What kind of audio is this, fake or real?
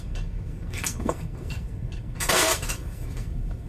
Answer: fake